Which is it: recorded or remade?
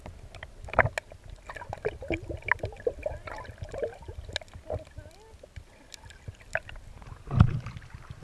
recorded